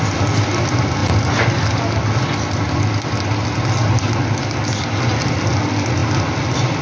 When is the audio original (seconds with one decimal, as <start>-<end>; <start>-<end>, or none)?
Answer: 0.0-6.8